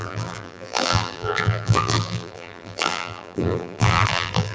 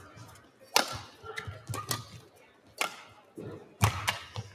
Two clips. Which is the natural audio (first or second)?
second